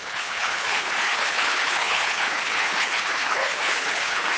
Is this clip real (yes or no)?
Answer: no